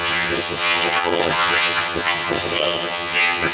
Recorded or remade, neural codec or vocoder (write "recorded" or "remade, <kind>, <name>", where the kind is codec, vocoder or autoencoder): remade, vocoder, HiFi-GAN